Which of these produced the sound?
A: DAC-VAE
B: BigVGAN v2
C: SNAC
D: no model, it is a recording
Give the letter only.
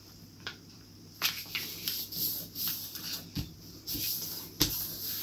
B